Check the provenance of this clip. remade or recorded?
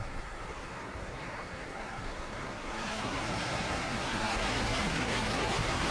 remade